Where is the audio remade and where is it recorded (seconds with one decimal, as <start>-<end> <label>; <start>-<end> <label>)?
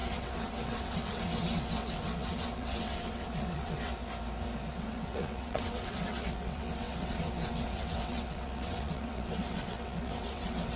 0.0-3.9 remade; 3.9-4.7 recorded; 4.7-10.8 remade